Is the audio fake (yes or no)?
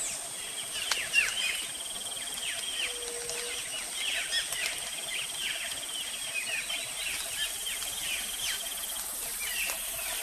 no